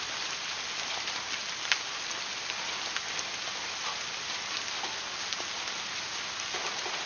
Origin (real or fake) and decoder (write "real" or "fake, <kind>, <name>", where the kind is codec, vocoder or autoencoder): real